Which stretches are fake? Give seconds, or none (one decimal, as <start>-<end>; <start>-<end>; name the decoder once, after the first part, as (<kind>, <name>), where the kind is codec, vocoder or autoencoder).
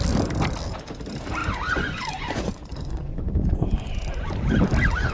1.4-3.9 (vocoder, Vocos)